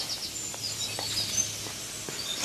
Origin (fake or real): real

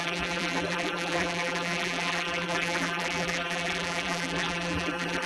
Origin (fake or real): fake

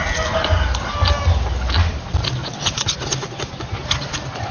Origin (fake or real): real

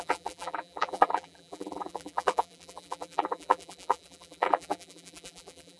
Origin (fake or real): fake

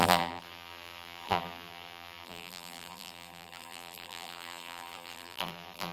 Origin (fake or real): fake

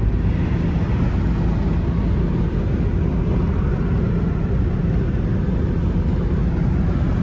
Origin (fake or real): real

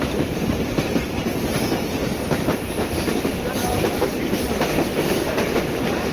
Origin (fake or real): fake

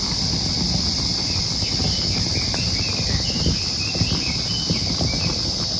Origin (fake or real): real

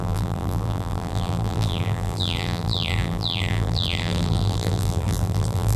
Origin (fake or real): fake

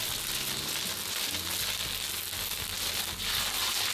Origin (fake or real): real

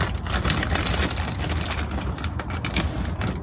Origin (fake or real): fake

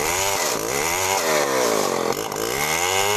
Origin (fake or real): real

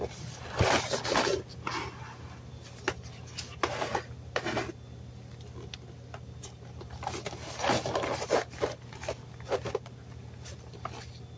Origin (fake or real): real